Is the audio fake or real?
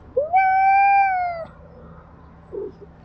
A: real